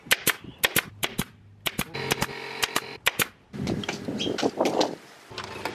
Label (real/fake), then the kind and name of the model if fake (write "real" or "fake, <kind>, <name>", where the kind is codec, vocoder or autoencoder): real